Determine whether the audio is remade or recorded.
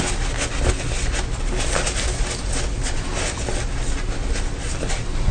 recorded